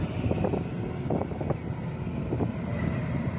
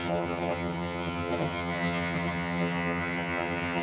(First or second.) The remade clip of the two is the second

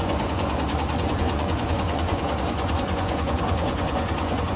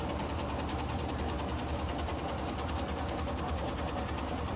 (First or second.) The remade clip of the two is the first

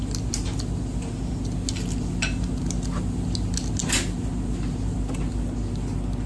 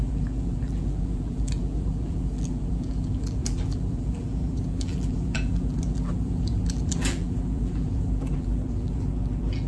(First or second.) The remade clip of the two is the second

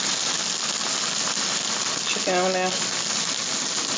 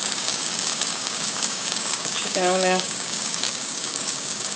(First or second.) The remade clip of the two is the second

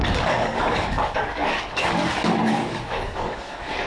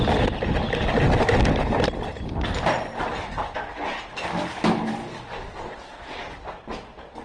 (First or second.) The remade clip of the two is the first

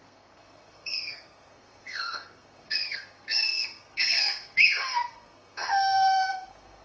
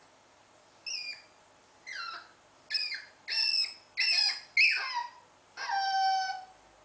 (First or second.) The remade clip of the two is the first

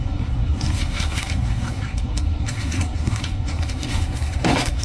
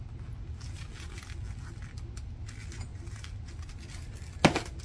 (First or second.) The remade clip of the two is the first